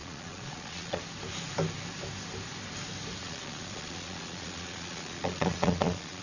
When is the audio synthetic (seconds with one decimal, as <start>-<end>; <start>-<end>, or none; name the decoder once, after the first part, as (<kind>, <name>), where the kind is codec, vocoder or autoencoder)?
0.0-1.0 (vocoder, Vocos); 3.2-6.2